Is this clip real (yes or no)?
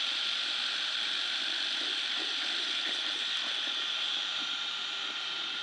yes